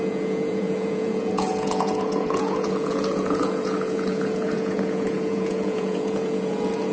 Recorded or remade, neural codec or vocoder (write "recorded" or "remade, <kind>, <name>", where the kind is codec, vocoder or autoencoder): remade, vocoder, Vocos